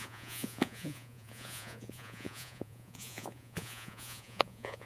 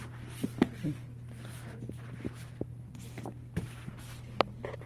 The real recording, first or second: second